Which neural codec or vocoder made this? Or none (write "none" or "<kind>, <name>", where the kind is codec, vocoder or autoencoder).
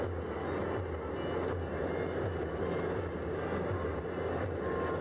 none